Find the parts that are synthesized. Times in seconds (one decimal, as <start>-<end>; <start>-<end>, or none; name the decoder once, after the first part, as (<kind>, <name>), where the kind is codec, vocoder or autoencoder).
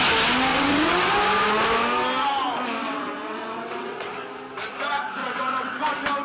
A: 0.5-1.1 (vocoder, WaveNeXt); 2.8-4.1; 5.2-5.8